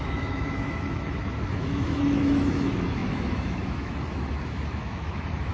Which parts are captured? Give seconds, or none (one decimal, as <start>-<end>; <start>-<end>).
none

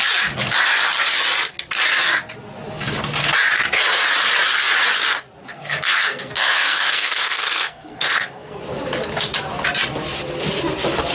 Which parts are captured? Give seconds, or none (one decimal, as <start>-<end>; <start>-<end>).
0.0-5.4; 8.6-11.1

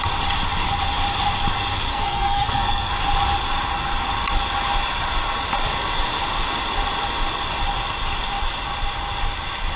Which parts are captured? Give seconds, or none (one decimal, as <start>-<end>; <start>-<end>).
0.0-1.9; 2.9-9.8

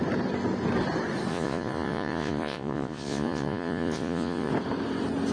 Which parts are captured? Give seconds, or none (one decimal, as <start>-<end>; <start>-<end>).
0.0-1.3; 4.5-5.3

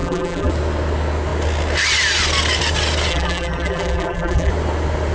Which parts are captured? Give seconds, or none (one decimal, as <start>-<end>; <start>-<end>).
0.5-3.1; 4.5-5.1

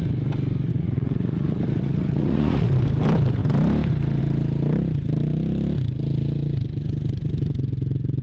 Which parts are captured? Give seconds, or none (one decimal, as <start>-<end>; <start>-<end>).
0.0-0.7; 2.7-8.2

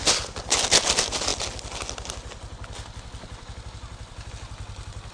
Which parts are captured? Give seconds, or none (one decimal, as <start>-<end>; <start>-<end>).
0.0-5.1

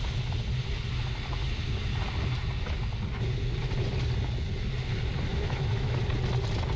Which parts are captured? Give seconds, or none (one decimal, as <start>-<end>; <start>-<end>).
0.0-5.3; 6.0-6.8